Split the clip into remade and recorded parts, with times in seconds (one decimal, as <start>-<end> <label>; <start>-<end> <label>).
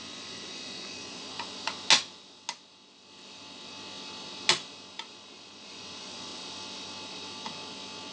0.0-1.5 remade; 1.5-5.1 recorded; 5.1-6.3 remade; 6.3-8.1 recorded